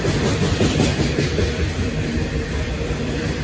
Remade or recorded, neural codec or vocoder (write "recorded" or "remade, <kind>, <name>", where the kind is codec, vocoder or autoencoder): recorded